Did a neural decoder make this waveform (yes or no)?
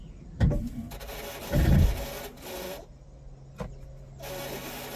no